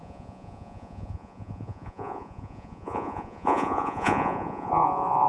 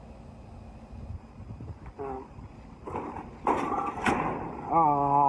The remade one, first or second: first